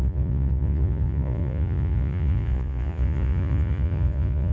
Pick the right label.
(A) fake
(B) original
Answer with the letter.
A